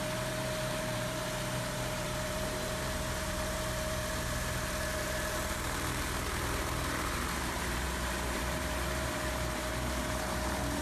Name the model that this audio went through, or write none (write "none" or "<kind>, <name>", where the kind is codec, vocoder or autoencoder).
vocoder, BigVGAN v2